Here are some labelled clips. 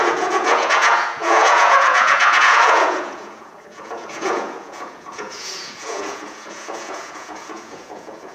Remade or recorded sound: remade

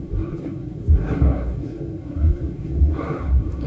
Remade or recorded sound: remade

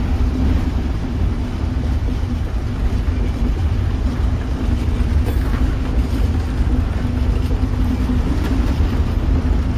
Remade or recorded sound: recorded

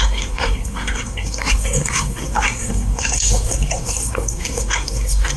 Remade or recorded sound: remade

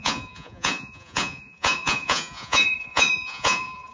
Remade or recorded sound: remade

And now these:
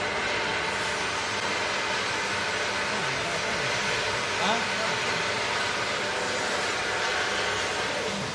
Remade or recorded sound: recorded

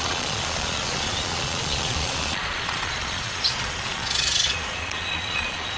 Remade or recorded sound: remade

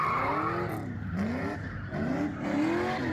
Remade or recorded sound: recorded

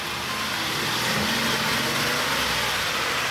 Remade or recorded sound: recorded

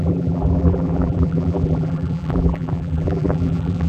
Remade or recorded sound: remade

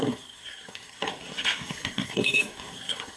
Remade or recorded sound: remade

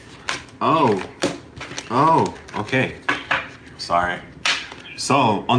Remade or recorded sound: recorded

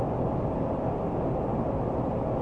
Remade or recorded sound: recorded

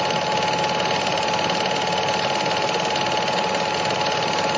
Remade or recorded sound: recorded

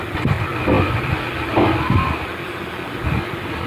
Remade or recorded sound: recorded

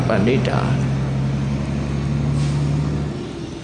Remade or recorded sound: recorded